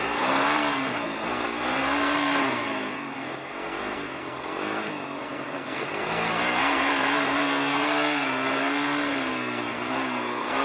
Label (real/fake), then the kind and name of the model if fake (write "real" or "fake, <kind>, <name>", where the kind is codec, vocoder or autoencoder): fake, codec, SNAC